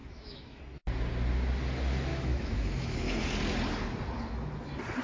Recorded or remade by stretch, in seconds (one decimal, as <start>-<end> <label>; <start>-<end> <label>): 0.0-0.6 remade; 0.6-2.1 recorded; 2.1-3.2 remade; 3.2-5.0 recorded

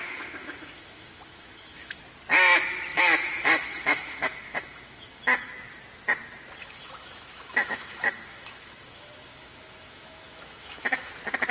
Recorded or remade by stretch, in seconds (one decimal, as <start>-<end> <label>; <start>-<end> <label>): 0.0-2.0 remade; 2.0-2.9 recorded; 2.9-5.4 remade; 5.4-6.6 recorded; 6.6-11.1 remade; 11.1-11.5 recorded